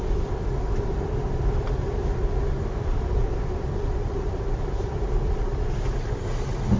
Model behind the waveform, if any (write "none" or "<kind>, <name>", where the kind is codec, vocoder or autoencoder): vocoder, BigVGAN v2